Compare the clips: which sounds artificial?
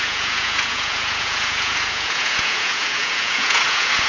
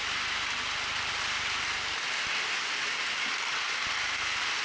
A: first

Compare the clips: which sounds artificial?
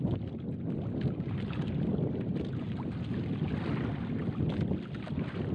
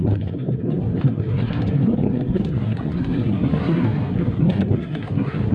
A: second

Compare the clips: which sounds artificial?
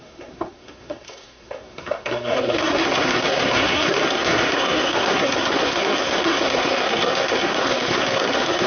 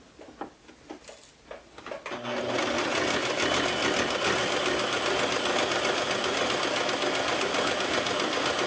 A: first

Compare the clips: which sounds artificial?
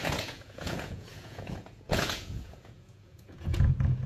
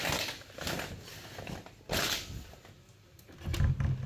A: first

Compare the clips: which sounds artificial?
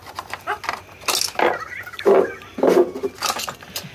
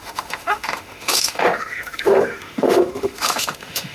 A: second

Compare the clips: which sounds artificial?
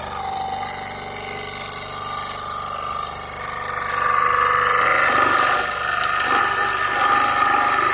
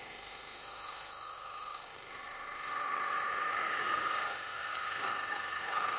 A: second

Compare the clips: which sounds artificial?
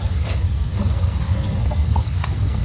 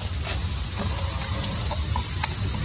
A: first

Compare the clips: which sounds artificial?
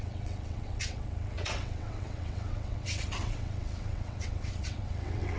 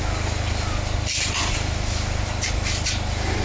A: first